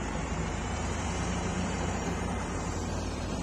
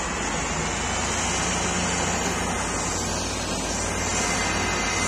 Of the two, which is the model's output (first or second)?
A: first